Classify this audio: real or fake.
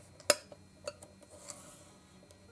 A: real